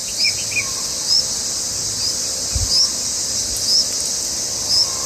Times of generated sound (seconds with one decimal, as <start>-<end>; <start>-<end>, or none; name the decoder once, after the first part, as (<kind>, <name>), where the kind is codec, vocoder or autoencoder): none